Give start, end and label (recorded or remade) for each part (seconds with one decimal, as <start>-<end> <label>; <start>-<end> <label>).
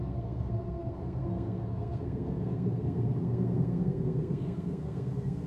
0.0-5.5 remade